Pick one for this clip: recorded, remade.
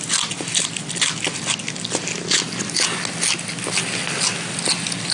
recorded